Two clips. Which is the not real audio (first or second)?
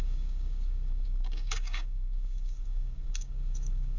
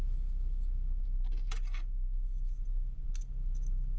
first